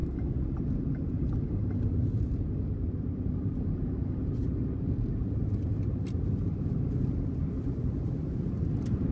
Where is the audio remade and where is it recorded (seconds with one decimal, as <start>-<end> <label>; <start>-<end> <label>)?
0.0-9.1 recorded